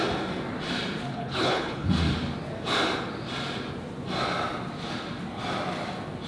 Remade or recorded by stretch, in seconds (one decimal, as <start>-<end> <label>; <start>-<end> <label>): 0.0-1.1 recorded; 1.1-1.9 remade; 1.9-6.3 recorded